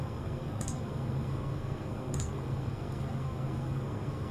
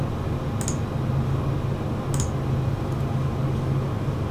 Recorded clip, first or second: second